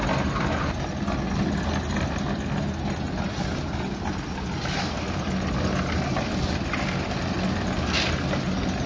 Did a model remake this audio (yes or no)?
no